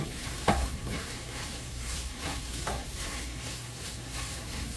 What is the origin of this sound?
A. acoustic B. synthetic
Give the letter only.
B